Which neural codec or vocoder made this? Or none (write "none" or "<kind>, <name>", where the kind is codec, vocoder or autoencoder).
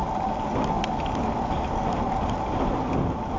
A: none